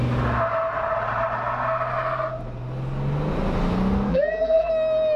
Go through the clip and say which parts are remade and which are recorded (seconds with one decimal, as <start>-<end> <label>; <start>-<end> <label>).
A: 0.0-4.1 recorded; 4.1-4.7 remade; 4.7-5.2 recorded